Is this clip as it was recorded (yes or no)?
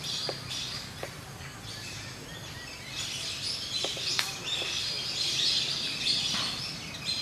yes